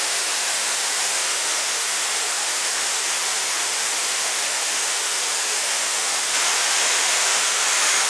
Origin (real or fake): fake